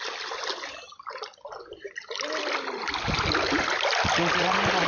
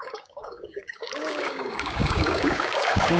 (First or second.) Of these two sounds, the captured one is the first